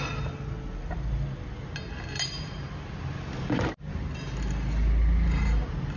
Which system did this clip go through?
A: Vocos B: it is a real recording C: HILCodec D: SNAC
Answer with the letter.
B